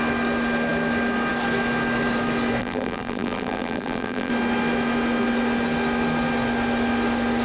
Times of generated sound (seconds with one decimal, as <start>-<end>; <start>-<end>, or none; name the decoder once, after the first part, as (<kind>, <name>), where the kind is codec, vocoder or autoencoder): 2.6-4.3 (vocoder, BigVGAN v2)